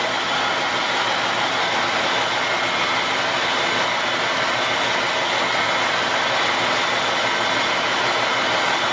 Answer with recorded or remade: recorded